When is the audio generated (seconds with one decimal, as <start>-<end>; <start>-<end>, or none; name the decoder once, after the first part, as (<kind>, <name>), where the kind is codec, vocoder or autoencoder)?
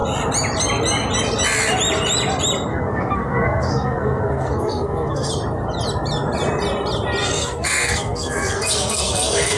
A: 2.7-5.3 (codec, SNAC); 7.2-9.6